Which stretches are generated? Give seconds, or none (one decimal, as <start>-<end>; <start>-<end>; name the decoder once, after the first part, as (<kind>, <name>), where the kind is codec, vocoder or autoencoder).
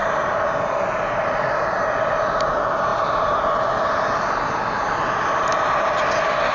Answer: none